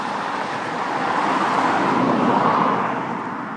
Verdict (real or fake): real